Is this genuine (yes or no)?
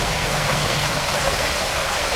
no